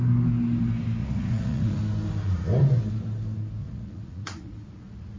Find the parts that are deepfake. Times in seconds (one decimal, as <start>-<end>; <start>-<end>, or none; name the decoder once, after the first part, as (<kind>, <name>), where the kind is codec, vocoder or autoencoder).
1.0-1.8 (vocoder, Vocos); 3.6-5.2